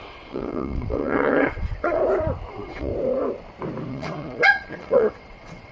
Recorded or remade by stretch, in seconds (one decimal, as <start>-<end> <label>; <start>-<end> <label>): 0.0-2.0 remade; 2.0-2.5 recorded; 2.5-2.9 remade; 2.9-3.9 recorded; 3.9-5.7 remade

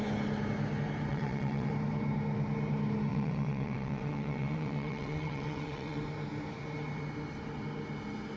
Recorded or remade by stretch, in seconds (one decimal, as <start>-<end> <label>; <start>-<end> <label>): 0.0-1.1 recorded; 1.1-1.7 remade; 1.7-3.1 recorded; 3.1-6.0 remade; 6.0-8.4 recorded

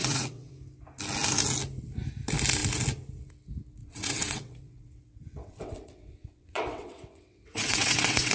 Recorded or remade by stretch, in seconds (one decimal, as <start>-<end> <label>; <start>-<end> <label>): 0.0-0.5 remade; 0.5-3.8 recorded; 3.8-8.3 remade

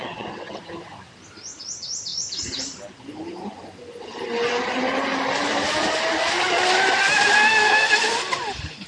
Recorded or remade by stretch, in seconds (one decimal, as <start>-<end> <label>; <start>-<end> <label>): 0.0-0.6 remade; 0.6-8.9 recorded

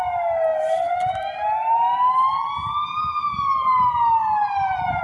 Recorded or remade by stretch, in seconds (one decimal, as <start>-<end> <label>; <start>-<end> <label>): 0.0-5.0 recorded

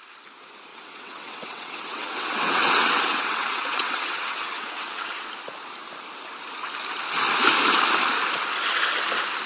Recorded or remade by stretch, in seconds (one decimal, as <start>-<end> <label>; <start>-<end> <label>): 0.0-0.7 recorded; 0.7-5.3 remade; 5.3-9.5 recorded